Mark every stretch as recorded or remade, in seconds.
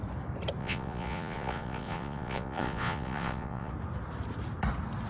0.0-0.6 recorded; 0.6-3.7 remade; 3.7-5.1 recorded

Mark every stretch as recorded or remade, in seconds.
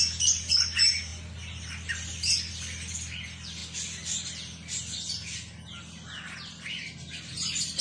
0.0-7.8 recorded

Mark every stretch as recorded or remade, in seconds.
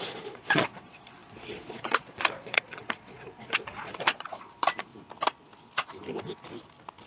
0.0-4.9 remade; 4.9-7.1 recorded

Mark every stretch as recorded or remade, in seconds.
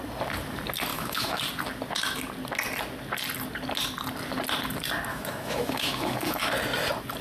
0.0-0.9 recorded; 0.9-1.4 remade; 1.4-5.1 recorded; 5.1-6.4 remade; 6.4-7.2 recorded